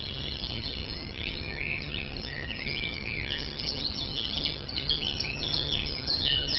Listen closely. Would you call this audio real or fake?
fake